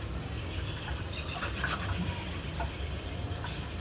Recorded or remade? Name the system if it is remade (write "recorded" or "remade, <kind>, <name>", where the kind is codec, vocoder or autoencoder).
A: remade, vocoder, BigVGAN v2